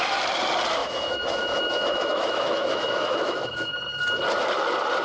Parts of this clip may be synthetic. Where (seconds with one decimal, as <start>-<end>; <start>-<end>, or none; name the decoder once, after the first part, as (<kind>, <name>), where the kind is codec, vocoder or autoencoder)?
0.8-3.8 (autoencoder, DAC-VAE)